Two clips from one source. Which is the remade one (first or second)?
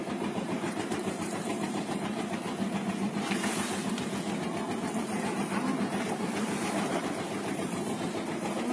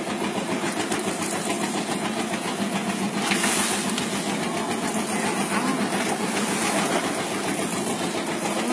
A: first